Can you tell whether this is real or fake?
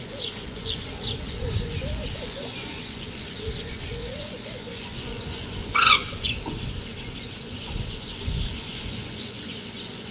fake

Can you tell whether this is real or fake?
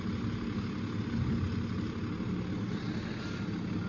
real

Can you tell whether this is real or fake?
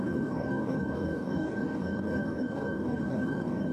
fake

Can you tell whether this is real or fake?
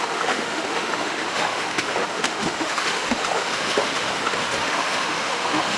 fake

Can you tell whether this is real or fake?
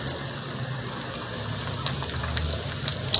real